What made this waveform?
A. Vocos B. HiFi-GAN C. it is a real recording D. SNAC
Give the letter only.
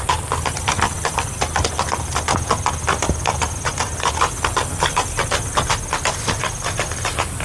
C